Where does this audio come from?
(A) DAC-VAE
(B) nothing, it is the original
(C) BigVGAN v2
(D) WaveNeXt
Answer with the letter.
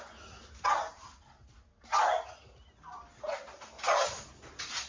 B